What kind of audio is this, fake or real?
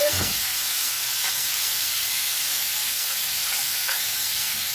fake